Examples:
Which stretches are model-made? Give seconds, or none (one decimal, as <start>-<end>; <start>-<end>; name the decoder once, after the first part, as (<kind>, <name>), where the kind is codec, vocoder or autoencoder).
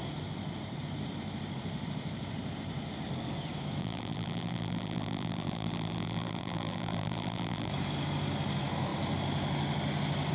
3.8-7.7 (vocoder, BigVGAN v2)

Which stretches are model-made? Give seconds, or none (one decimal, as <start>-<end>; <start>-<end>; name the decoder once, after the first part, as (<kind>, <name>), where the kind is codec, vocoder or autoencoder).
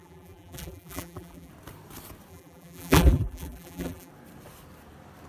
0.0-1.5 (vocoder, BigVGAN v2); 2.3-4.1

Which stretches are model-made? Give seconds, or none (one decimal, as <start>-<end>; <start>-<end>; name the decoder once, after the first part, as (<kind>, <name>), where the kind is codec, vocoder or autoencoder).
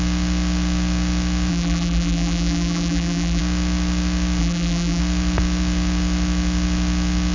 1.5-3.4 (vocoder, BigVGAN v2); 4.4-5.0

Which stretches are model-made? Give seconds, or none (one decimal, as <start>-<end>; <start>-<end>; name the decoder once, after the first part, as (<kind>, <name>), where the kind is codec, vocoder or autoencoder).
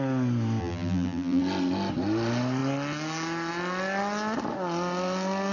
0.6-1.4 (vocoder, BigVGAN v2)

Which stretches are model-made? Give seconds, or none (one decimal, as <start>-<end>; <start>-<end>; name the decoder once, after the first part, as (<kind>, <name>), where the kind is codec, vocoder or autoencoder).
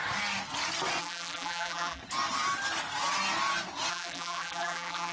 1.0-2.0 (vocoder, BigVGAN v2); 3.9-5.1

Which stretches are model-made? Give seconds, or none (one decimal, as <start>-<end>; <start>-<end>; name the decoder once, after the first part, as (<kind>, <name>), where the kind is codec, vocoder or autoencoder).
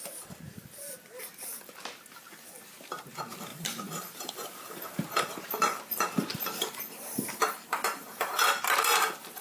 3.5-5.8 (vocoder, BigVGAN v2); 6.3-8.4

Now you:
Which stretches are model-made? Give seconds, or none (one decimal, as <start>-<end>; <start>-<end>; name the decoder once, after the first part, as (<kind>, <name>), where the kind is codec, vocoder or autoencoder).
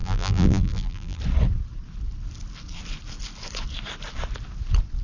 0.0-1.2 (vocoder, BigVGAN v2)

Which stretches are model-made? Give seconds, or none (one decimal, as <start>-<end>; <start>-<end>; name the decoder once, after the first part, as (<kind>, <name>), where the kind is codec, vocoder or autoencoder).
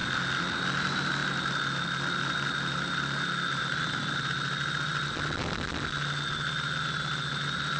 none